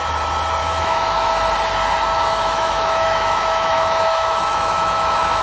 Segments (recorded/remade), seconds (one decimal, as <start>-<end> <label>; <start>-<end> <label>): 0.0-0.6 recorded; 0.6-1.3 remade; 1.3-2.1 recorded; 2.1-5.4 remade